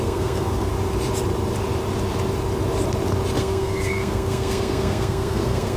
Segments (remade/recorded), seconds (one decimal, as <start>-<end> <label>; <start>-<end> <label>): 0.0-0.7 remade; 0.7-3.4 recorded; 3.4-5.8 remade